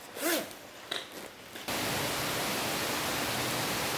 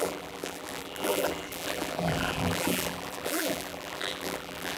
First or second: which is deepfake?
second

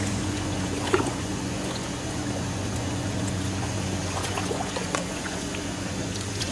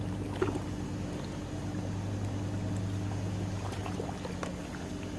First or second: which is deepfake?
first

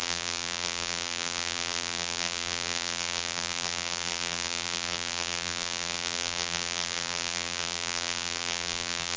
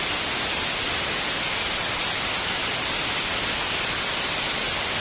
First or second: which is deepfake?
first